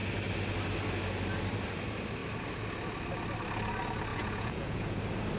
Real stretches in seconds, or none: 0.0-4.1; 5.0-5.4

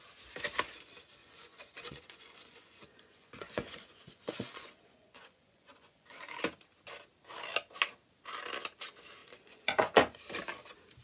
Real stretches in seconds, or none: 0.0-1.2; 6.4-9.2; 10.2-11.0

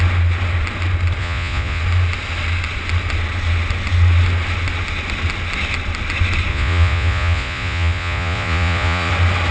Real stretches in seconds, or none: 0.0-1.2; 1.8-6.5; 9.1-9.5

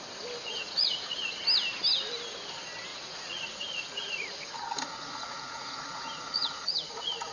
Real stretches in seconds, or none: 0.0-0.5; 1.4-2.9

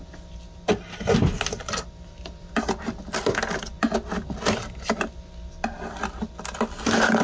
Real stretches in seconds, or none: 0.0-7.2

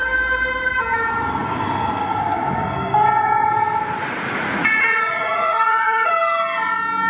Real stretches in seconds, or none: 0.0-4.0; 6.1-7.1

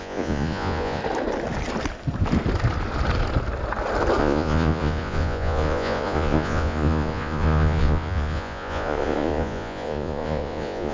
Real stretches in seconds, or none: 1.0-4.2